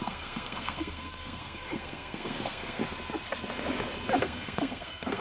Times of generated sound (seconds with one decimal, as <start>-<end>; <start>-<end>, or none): 0.0-2.8; 4.2-5.2